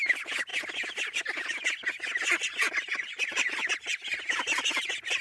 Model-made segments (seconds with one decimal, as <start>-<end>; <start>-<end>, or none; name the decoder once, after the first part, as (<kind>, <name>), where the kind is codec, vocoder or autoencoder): none